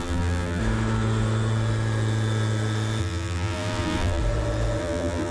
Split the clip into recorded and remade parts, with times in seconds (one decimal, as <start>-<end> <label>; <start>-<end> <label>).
0.0-0.6 remade; 0.6-3.0 recorded; 3.0-4.2 remade; 4.2-4.8 recorded; 4.8-5.3 remade